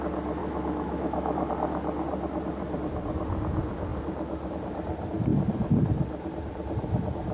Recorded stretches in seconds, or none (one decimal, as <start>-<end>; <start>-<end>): 0.0-0.4; 1.5-7.3